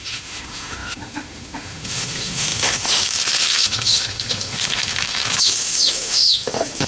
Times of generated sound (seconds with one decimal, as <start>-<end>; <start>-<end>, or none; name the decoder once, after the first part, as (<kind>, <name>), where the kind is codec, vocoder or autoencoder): 0.0-6.9 (autoencoder, DAC-VAE)